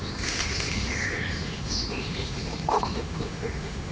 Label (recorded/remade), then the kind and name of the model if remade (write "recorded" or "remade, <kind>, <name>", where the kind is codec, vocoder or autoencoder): remade, autoencoder, DAC-VAE